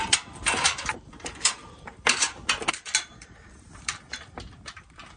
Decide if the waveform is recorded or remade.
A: remade